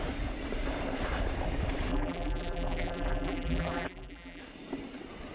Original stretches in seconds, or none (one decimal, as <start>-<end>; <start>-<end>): 0.0-1.9; 4.4-5.3